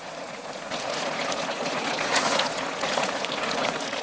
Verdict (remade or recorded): remade